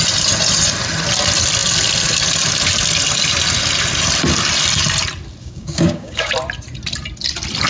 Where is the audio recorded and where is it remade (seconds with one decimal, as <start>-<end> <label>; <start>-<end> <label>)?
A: 0.0-5.4 recorded; 5.4-6.3 remade; 6.3-7.7 recorded